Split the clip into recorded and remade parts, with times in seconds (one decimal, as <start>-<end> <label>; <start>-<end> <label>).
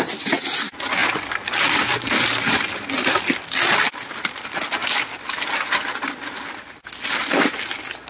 0.0-8.1 recorded